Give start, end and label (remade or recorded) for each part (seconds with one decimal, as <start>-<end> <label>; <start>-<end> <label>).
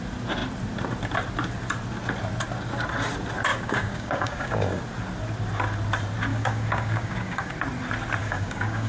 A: 0.0-3.5 recorded; 3.5-4.8 remade; 4.8-6.3 recorded; 6.3-7.5 remade; 7.5-8.2 recorded; 8.2-8.9 remade